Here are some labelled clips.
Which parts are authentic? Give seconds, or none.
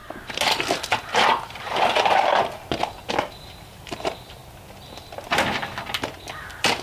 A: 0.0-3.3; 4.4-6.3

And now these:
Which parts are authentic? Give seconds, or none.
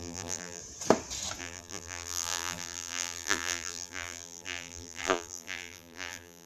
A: 0.6-1.4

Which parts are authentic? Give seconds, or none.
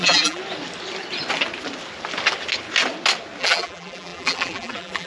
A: 0.4-3.4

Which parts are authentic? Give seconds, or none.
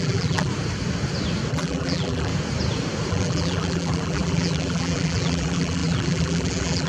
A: 0.5-1.5; 2.3-3.1